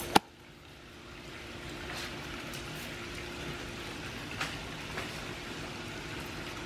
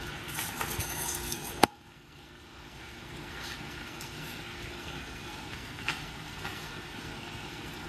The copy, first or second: second